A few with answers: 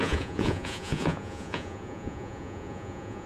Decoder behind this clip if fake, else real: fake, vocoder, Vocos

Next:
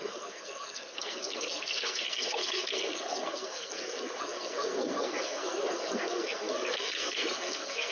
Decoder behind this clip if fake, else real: fake, codec, SNAC